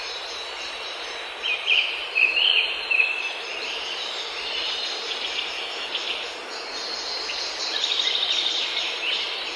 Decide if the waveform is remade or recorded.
remade